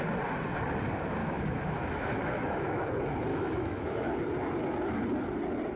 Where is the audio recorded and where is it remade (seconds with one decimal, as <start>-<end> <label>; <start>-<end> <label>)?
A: 0.0-1.2 recorded; 1.2-2.9 remade; 2.9-3.3 recorded; 3.3-4.2 remade; 4.2-5.8 recorded